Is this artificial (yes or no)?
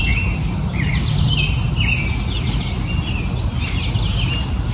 no